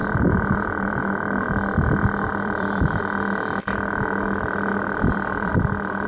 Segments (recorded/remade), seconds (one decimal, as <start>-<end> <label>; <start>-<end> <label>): 0.0-1.0 remade; 1.0-2.3 recorded; 2.3-3.0 remade; 3.0-4.7 recorded; 4.7-5.5 remade; 5.5-6.1 recorded